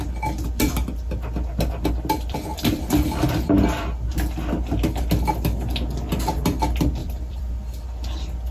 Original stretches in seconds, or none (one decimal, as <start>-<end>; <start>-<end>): 0.0-7.0; 7.5-8.5